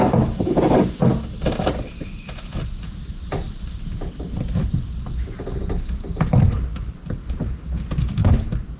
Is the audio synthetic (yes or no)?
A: no